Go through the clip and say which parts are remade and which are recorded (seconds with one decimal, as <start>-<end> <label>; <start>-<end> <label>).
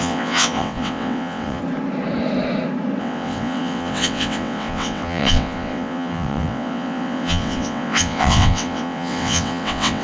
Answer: 0.0-1.6 remade; 1.6-3.0 recorded; 3.0-10.0 remade